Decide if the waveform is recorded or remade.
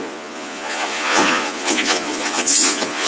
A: remade